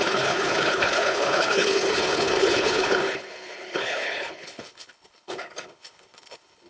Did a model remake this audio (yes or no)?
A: yes